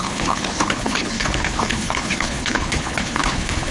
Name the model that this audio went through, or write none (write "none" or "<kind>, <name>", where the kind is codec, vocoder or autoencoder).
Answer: codec, HILCodec